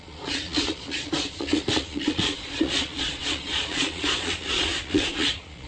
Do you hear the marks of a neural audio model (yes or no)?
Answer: yes